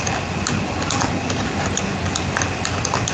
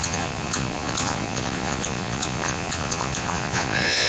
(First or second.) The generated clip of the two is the second